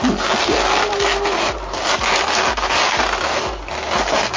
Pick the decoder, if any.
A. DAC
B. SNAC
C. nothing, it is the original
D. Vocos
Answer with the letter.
C